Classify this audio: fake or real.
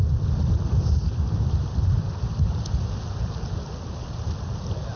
real